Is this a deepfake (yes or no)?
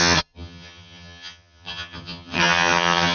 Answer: yes